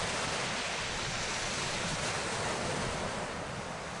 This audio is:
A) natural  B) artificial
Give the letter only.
A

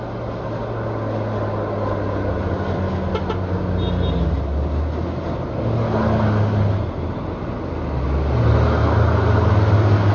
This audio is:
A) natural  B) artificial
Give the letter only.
A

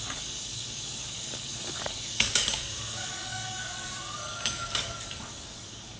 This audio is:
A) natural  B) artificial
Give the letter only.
B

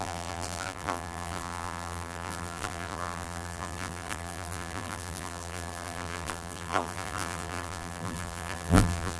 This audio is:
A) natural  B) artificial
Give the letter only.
B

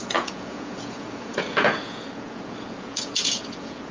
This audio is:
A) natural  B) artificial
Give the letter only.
B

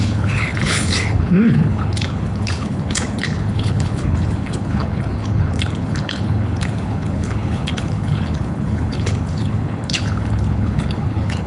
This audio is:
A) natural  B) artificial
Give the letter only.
B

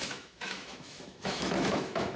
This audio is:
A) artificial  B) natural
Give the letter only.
A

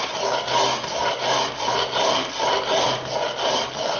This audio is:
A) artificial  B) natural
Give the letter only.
B